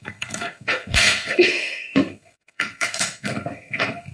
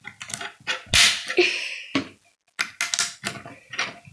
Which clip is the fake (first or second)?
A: first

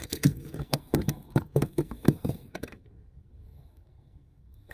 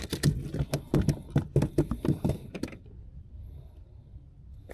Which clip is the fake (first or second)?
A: first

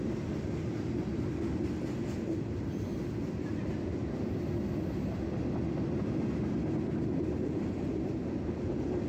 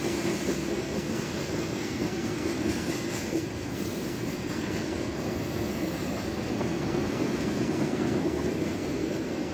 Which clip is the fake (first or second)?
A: second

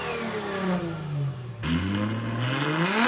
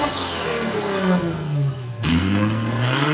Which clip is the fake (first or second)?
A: second